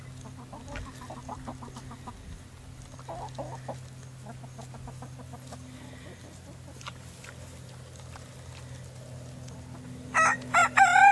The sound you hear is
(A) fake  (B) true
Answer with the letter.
B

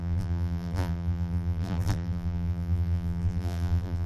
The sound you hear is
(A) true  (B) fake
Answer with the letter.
B